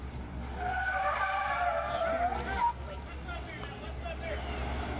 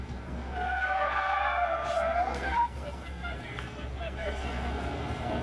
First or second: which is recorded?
first